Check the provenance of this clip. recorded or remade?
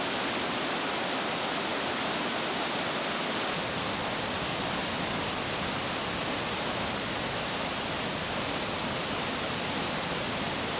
recorded